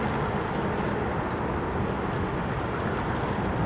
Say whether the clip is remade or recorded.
recorded